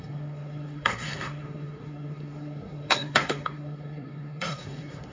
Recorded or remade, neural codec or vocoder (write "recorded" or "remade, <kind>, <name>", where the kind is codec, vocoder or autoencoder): remade, codec, SNAC